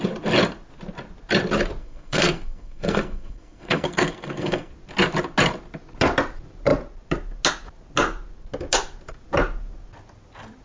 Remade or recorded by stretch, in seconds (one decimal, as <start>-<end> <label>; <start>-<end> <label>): 0.0-1.8 recorded; 1.8-4.7 remade; 4.7-10.6 recorded